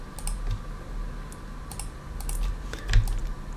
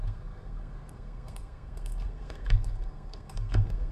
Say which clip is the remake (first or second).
second